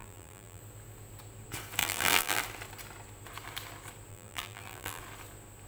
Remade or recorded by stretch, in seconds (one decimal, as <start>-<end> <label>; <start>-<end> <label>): 0.0-0.6 remade; 0.6-1.8 recorded; 1.8-2.4 remade; 2.4-4.1 recorded; 4.1-5.0 remade; 5.0-5.7 recorded